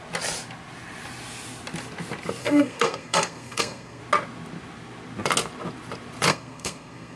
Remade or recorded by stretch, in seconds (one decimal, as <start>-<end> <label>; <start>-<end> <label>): 0.0-2.4 recorded; 2.4-4.0 remade; 4.0-6.3 recorded; 6.3-7.2 remade